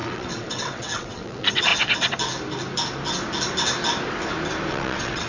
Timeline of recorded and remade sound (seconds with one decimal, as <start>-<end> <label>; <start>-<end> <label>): 0.0-1.7 remade; 1.7-4.7 recorded; 4.7-5.3 remade